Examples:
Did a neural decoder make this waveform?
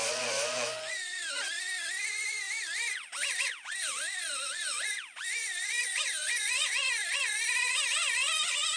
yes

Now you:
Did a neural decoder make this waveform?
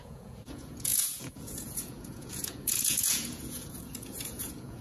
yes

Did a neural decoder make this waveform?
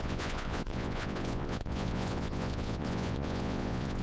yes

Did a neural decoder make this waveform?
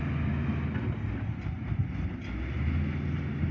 no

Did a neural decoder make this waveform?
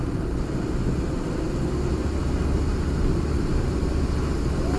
no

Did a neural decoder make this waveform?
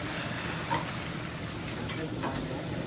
no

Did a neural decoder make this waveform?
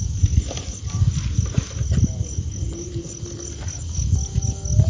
no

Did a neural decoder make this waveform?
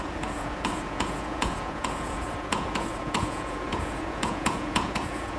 yes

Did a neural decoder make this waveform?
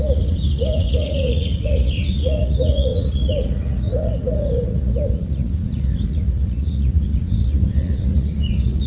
yes